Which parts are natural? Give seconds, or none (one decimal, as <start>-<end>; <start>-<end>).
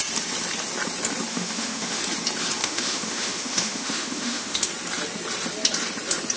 0.0-1.3; 2.0-2.6; 4.6-6.4